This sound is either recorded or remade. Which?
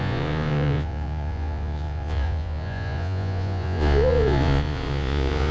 remade